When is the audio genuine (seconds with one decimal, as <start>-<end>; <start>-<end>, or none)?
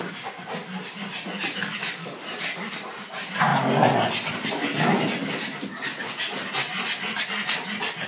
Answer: 0.0-8.1